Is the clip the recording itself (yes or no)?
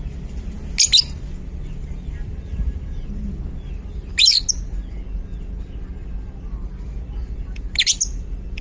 yes